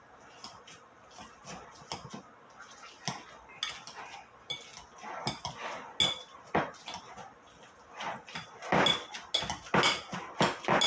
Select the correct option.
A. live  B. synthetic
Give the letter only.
A